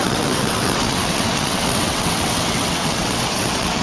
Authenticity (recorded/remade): remade